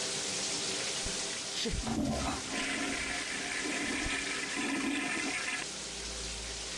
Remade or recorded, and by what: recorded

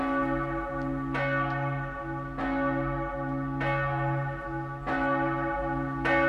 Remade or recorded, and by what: recorded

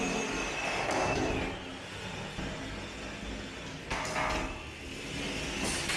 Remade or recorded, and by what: recorded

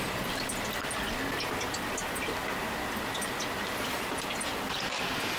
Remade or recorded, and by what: recorded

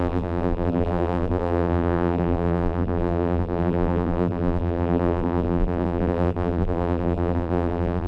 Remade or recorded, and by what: remade, vocoder, BigVGAN v2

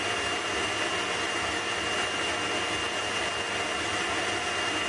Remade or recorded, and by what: recorded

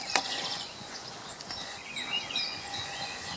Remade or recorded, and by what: remade, vocoder, Vocos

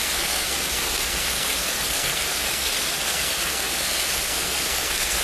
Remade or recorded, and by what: remade, codec, SNAC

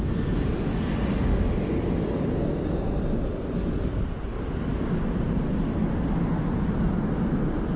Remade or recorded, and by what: recorded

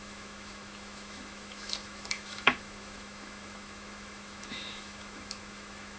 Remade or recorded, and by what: remade, autoencoder, DAC-VAE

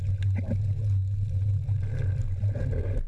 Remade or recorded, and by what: recorded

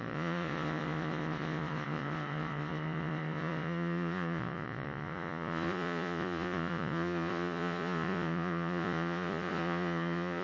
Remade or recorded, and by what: remade, vocoder, Vocos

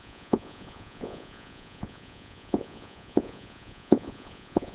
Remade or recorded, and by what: remade, vocoder, Vocos